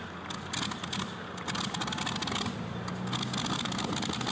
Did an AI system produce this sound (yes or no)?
no